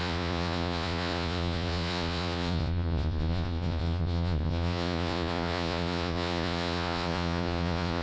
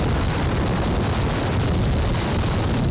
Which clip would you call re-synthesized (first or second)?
first